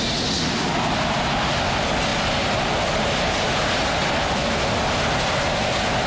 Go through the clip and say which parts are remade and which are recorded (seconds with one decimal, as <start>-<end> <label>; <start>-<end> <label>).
0.0-6.1 recorded